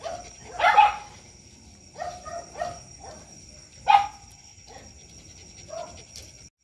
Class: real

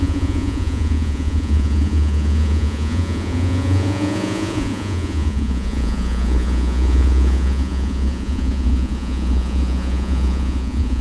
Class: fake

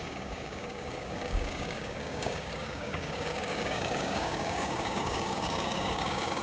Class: fake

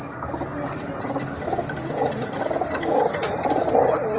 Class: real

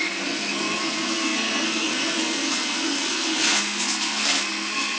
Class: fake